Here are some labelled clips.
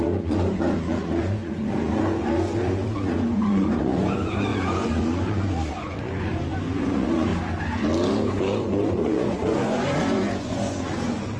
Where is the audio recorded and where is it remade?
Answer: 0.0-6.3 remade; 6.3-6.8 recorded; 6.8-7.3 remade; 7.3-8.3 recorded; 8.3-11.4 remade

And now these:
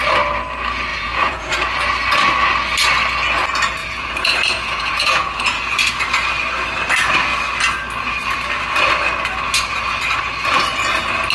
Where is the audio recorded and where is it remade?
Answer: 0.0-0.9 recorded; 0.9-1.5 remade; 1.5-3.8 recorded; 3.8-5.6 remade; 5.6-11.3 recorded

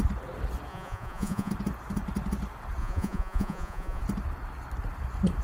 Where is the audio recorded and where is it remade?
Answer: 0.0-0.7 recorded; 0.7-1.5 remade; 1.5-2.8 recorded; 2.8-4.0 remade; 4.0-5.4 recorded

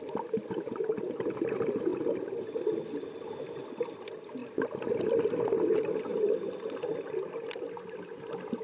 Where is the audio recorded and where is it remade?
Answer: 0.0-8.6 recorded

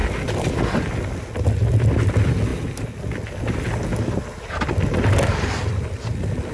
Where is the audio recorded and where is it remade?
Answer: 0.0-6.5 recorded